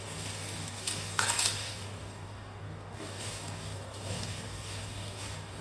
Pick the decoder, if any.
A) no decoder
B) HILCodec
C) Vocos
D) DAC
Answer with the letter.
D